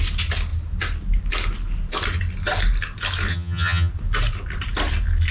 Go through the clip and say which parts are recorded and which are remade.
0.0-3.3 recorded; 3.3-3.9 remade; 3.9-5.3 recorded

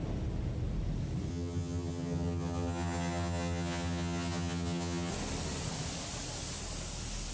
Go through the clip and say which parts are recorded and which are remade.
0.0-1.3 recorded; 1.3-5.1 remade; 5.1-7.3 recorded

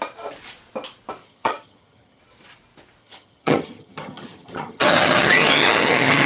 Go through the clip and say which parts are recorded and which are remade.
0.0-1.2 recorded; 1.2-2.2 remade; 2.2-3.0 recorded; 3.0-6.3 remade

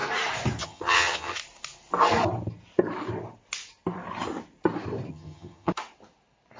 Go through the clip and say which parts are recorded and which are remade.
0.0-0.6 recorded; 0.6-1.4 remade; 1.4-5.1 recorded; 5.1-5.7 remade; 5.7-6.6 recorded